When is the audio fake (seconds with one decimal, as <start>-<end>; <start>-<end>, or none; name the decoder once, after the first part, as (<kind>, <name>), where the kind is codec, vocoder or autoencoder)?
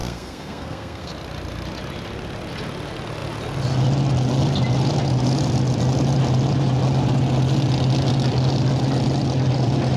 0.0-1.1 (codec, SNAC)